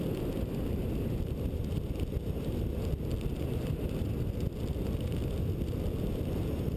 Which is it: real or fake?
real